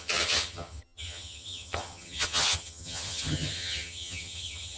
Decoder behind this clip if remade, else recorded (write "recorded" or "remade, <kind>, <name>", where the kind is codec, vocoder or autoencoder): remade, vocoder, HiFi-GAN